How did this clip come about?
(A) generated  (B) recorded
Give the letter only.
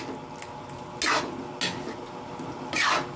B